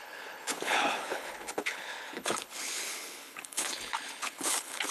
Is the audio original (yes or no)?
no